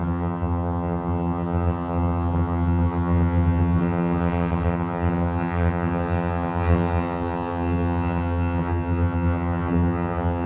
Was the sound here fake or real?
fake